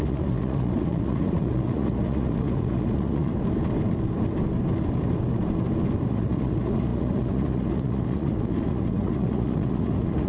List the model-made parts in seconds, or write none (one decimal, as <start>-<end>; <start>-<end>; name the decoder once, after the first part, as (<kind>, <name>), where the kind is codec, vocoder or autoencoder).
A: 0.0-3.3 (vocoder, Vocos); 6.1-10.3